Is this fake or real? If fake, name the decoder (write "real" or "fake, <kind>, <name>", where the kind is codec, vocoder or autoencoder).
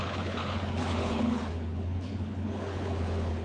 fake, codec, HILCodec